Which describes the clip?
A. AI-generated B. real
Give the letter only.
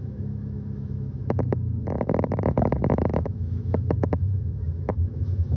A